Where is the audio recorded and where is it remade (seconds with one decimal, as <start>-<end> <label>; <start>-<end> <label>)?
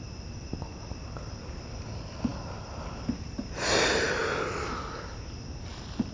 0.0-6.1 recorded